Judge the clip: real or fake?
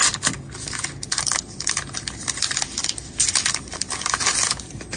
real